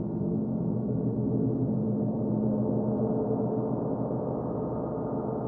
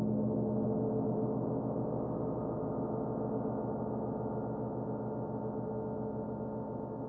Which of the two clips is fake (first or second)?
first